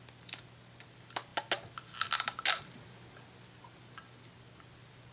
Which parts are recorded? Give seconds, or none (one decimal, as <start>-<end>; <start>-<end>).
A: 0.0-5.1